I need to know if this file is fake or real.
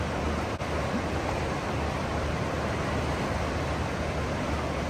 real